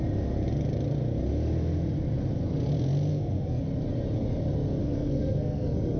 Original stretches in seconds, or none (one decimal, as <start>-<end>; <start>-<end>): 0.0-3.1; 3.6-4.8